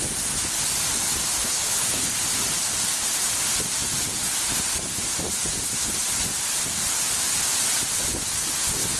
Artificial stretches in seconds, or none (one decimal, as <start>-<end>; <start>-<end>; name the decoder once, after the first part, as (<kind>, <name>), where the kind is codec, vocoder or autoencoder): 1.4-2.1 (codec, HILCodec)